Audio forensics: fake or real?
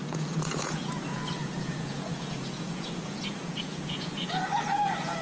fake